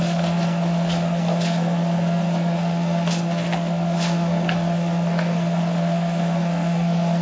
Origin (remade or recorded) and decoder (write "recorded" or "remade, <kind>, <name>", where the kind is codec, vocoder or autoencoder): remade, codec, SNAC